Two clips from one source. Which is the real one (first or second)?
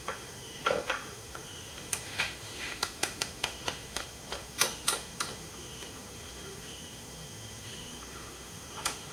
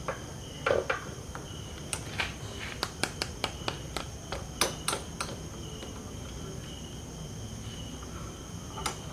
second